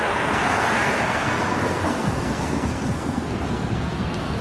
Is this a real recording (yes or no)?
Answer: no